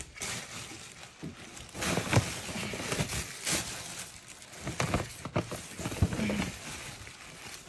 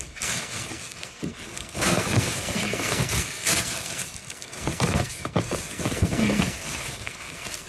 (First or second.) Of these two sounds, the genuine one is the first